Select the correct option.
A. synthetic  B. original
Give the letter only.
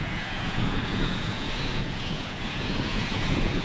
A